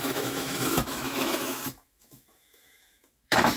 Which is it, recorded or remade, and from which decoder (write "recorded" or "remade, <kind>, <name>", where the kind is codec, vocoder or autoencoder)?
remade, autoencoder, DAC-VAE